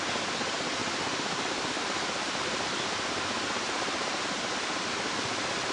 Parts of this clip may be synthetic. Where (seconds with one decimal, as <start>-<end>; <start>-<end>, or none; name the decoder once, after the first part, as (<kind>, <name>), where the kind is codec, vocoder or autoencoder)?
0.8-4.2 (vocoder, BigVGAN v2)